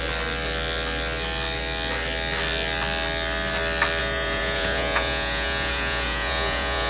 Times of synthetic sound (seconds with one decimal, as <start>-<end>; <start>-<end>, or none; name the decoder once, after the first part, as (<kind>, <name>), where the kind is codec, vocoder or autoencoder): 4.0-6.9 (vocoder, Vocos)